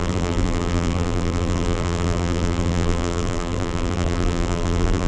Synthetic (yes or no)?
yes